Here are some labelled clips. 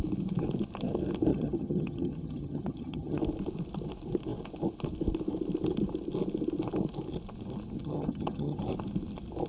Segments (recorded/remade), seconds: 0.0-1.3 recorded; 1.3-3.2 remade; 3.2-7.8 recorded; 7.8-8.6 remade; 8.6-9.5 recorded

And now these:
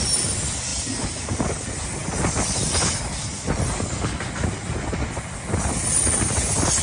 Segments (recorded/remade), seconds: 0.0-6.8 recorded

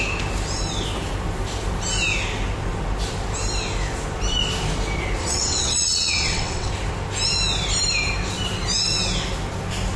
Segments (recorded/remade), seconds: 0.0-5.2 recorded; 5.2-6.7 remade; 6.7-10.0 recorded

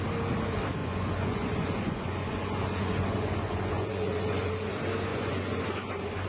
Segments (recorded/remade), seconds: 0.0-0.8 recorded; 0.8-4.5 remade; 4.5-5.1 recorded; 5.1-5.6 remade; 5.6-6.3 recorded